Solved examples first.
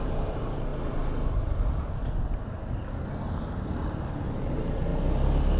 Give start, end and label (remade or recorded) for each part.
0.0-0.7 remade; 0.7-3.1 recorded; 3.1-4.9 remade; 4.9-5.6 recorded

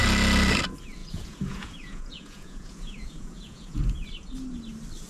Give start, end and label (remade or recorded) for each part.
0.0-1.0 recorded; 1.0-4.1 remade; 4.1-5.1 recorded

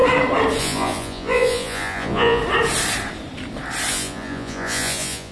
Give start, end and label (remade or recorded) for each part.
0.0-0.6 recorded; 0.6-2.4 remade; 2.4-3.9 recorded; 3.9-5.3 remade

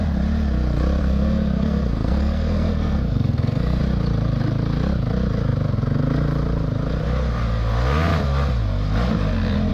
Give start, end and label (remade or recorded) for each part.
0.0-1.0 recorded; 1.0-3.8 remade; 3.8-9.7 recorded

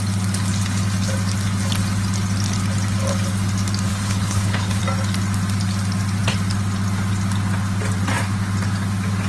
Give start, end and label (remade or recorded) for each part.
0.0-3.9 recorded; 3.9-4.8 remade; 4.8-9.3 recorded